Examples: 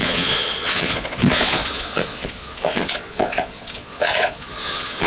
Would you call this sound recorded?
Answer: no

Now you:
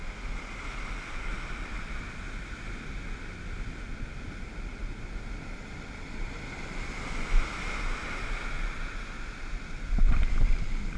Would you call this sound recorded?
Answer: yes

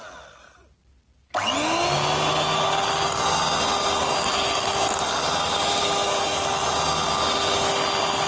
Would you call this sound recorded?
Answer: yes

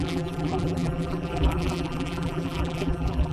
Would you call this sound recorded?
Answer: no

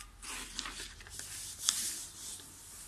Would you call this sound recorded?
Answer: yes